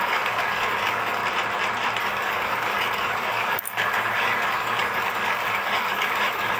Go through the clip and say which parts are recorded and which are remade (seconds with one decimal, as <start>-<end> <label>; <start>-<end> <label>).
0.0-1.2 remade; 1.2-2.0 recorded; 2.0-6.6 remade